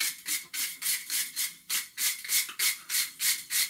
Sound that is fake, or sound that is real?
real